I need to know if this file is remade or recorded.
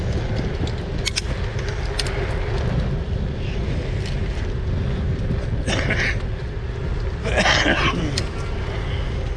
recorded